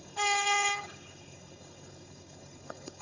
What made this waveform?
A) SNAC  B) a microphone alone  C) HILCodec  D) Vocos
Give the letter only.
C